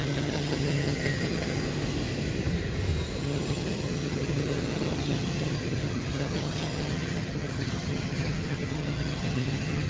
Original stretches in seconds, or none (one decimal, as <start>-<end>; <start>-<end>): 1.6-3.2